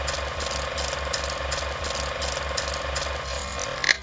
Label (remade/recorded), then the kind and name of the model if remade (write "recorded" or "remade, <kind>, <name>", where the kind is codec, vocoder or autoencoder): recorded